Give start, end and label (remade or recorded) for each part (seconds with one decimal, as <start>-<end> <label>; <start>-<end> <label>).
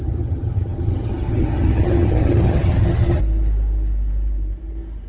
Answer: 0.0-3.2 remade; 3.2-5.1 recorded